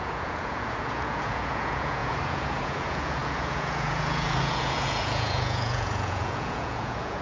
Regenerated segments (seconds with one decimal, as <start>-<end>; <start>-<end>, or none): 0.0-7.2

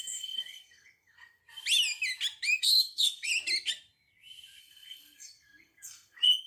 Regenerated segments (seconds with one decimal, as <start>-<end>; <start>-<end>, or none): 0.0-1.4; 2.6-3.3; 4.6-6.5

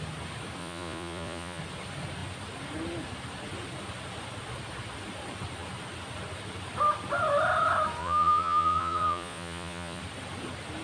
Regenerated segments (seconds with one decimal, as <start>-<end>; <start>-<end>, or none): 0.6-1.6; 8.0-10.0

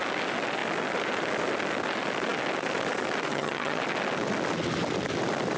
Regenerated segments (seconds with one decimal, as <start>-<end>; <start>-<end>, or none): 3.3-3.8

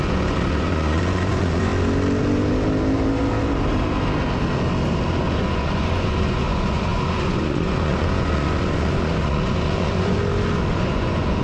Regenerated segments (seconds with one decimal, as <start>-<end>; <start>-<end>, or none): 0.0-1.7; 5.2-10.2; 10.7-11.4

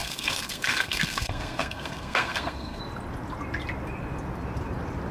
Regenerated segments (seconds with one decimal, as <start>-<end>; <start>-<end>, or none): 0.0-2.8